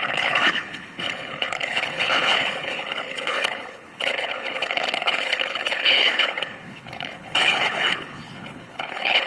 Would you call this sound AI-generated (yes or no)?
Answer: yes